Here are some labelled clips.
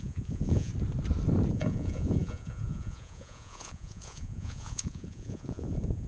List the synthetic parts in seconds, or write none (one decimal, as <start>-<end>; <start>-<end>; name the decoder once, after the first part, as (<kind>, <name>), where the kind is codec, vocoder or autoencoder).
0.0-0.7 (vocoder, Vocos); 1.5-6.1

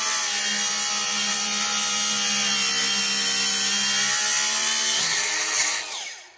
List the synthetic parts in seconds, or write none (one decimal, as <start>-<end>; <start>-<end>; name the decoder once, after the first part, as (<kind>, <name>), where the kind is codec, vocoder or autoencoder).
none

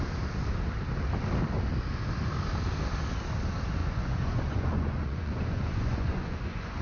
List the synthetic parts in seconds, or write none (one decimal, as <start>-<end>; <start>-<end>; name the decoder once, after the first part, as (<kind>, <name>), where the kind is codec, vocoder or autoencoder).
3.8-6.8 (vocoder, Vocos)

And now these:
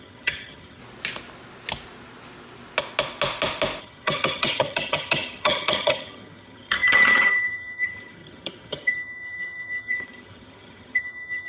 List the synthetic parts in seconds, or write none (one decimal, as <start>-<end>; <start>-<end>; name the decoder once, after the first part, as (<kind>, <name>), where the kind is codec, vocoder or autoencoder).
0.0-0.8 (vocoder, HiFi-GAN); 3.8-11.5